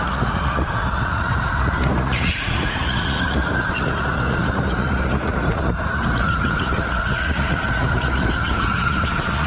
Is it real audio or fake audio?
fake